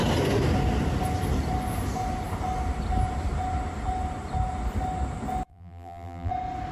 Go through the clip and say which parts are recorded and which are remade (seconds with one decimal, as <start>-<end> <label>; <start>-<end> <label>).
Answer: 0.0-5.5 recorded; 5.5-6.3 remade; 6.3-6.7 recorded